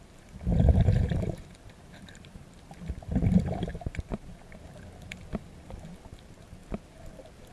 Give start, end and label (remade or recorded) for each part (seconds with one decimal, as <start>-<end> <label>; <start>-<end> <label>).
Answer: 0.0-0.5 recorded; 0.5-2.6 remade; 2.6-3.7 recorded; 3.7-4.4 remade; 4.4-7.5 recorded